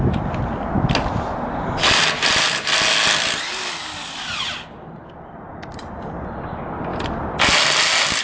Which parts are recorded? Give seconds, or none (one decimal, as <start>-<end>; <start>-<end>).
0.0-8.2